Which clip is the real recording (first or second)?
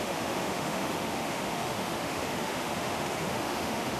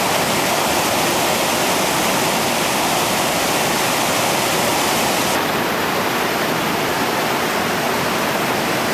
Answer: second